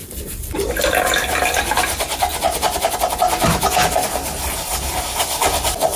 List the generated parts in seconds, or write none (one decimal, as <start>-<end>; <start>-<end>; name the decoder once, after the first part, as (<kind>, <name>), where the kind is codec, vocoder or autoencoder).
0.0-1.6 (vocoder, BigVGAN v2)